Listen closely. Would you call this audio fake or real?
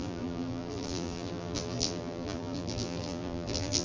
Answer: fake